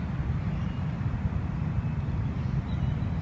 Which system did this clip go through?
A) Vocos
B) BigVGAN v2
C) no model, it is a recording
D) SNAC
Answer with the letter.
C